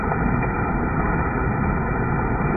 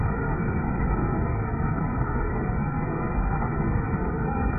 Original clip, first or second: first